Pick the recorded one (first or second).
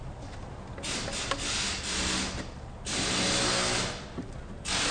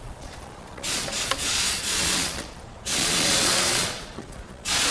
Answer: first